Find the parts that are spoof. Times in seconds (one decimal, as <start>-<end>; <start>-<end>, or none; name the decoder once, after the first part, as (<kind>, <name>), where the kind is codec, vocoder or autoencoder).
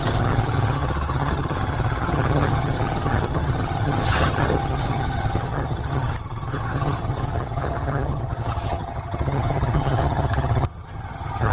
0.0-11.5 (vocoder, HiFi-GAN)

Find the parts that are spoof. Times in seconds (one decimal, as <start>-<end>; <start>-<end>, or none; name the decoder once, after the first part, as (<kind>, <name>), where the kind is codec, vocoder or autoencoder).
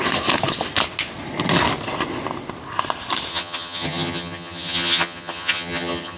3.3-6.2 (vocoder, HiFi-GAN)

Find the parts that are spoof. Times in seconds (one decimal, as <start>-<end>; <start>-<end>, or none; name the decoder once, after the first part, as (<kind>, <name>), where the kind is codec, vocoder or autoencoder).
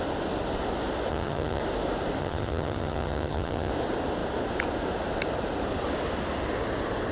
1.1-1.6 (vocoder, HiFi-GAN); 2.2-3.7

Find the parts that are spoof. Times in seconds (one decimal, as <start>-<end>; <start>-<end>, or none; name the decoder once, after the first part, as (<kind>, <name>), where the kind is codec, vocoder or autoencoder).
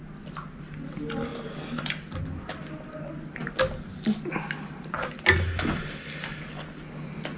none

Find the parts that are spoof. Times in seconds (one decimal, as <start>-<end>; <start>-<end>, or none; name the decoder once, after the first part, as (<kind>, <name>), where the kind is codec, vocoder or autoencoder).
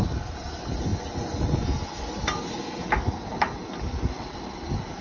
none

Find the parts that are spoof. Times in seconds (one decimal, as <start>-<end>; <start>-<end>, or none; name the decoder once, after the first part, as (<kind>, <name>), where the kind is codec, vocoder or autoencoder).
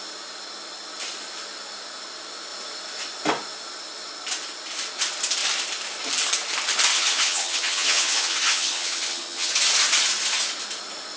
6.9-9.5 (vocoder, HiFi-GAN)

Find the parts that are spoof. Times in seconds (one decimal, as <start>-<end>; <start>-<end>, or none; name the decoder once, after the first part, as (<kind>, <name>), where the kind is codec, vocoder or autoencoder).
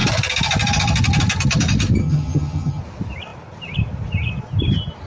2.0-2.8 (vocoder, HiFi-GAN)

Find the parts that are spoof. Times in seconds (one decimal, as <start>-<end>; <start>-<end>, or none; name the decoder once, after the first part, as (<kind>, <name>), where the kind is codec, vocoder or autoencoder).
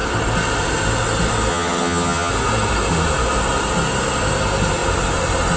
1.5-2.3 (vocoder, HiFi-GAN)